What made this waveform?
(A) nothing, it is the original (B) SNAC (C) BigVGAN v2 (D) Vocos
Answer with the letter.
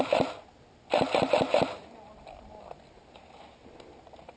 A